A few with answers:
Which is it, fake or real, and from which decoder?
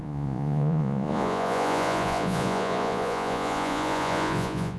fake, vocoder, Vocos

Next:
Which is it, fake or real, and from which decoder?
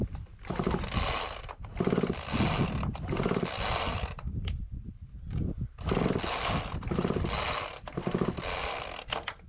real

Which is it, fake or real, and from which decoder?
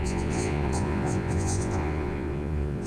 fake, vocoder, Vocos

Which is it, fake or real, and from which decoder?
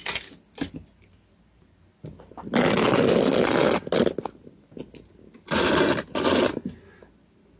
real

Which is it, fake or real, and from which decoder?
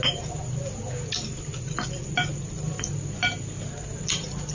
real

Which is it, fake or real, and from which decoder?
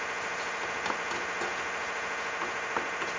real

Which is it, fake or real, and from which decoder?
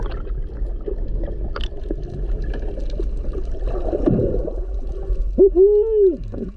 real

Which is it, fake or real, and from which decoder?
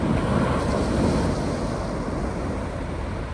real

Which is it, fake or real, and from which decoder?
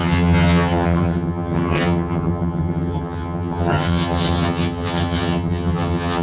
fake, vocoder, HiFi-GAN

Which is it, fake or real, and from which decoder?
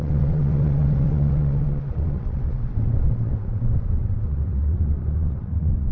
fake, vocoder, WaveNeXt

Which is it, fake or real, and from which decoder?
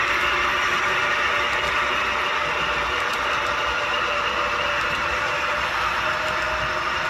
real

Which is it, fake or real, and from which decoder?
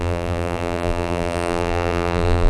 fake, vocoder, BigVGAN v2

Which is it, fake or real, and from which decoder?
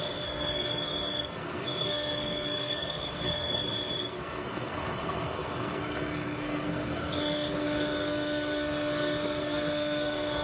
fake, codec, SNAC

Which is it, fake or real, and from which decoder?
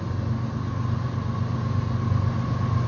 real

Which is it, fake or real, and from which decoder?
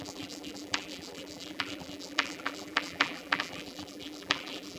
fake, vocoder, BigVGAN v2